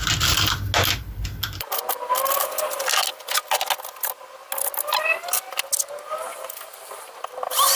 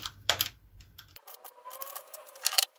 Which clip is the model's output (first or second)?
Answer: second